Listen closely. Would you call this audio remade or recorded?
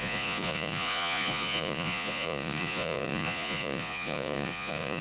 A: remade